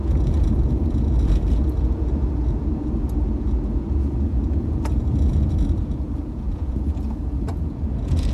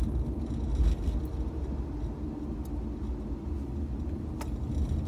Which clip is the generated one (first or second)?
first